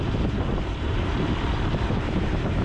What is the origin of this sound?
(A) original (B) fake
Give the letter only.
B